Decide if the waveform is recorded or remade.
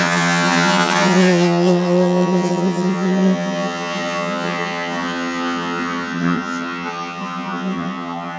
remade